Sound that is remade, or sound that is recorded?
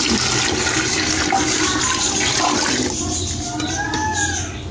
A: recorded